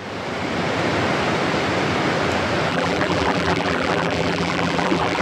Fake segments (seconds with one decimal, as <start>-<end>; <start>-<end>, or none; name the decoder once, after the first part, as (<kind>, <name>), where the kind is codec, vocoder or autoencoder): 2.7-5.2 (vocoder, BigVGAN v2)